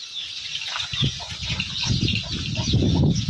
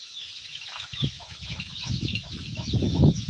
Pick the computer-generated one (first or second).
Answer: second